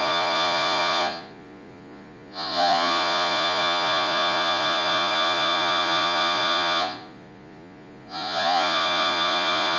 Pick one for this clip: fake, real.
fake